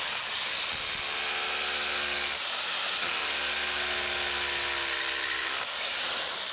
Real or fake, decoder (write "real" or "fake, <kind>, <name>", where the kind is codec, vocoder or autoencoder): real